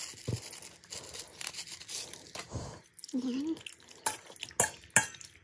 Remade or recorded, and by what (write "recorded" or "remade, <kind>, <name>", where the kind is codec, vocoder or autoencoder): recorded